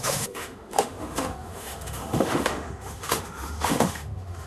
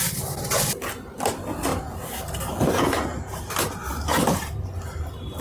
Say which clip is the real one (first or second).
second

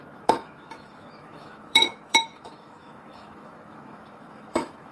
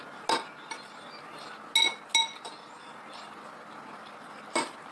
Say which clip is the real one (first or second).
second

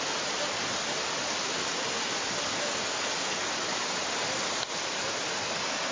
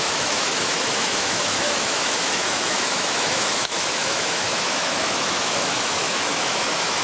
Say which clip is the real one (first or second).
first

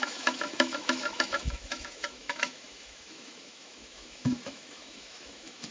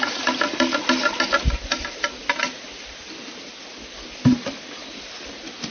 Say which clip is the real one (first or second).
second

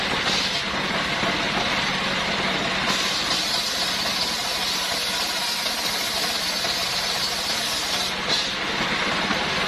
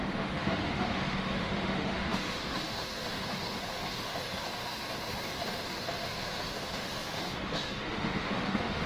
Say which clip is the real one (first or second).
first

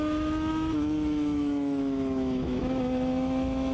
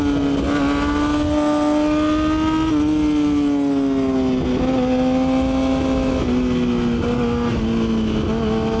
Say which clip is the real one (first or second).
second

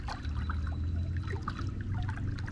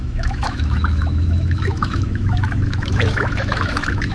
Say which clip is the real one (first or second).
first